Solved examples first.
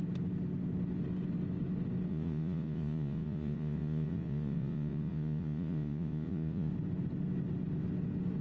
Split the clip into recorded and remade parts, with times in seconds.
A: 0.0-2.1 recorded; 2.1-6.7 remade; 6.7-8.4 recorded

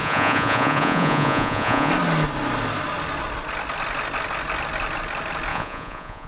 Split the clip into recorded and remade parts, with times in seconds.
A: 0.0-1.9 remade; 1.9-5.5 recorded; 5.5-6.3 remade